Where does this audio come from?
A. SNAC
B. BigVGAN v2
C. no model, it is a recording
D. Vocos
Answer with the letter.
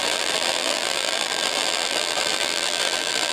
B